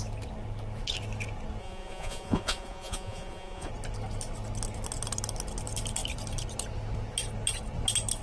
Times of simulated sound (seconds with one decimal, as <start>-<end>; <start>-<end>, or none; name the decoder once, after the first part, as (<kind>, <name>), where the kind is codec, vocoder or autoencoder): 1.6-3.7 (vocoder, Vocos)